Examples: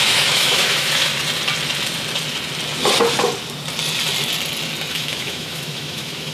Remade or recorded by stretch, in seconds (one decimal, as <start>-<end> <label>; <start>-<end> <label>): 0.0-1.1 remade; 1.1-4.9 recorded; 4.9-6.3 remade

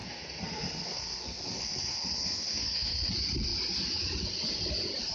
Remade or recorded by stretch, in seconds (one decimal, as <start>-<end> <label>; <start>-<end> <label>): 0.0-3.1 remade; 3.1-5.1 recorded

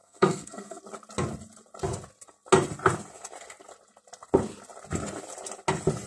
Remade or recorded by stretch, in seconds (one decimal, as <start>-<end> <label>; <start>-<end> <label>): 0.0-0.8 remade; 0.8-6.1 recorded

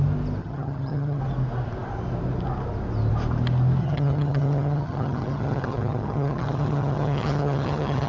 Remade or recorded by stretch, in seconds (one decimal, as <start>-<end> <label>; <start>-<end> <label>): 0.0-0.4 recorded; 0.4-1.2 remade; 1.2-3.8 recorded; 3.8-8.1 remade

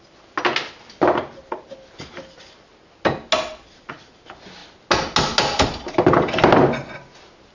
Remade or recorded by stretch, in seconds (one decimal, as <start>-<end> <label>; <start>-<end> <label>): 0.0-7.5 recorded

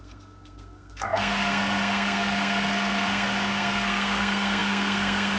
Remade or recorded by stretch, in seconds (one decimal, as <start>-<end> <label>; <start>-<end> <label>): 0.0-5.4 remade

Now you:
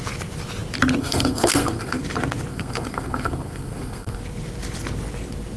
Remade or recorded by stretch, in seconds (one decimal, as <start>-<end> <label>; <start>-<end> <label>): 0.0-1.0 recorded; 1.0-2.0 remade; 2.0-2.5 recorded; 2.5-4.2 remade; 4.2-5.6 recorded